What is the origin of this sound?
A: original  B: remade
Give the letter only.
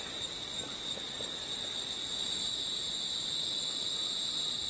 B